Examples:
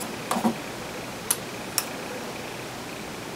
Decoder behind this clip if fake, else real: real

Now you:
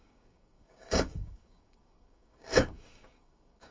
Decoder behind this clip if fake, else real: fake, codec, DAC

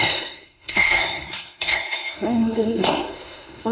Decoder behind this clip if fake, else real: fake, codec, SNAC